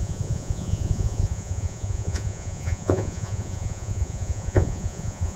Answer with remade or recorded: remade